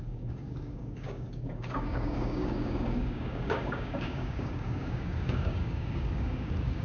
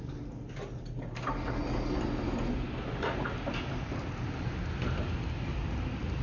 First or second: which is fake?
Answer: first